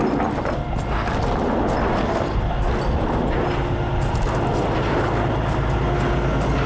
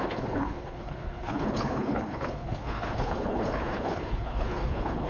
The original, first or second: first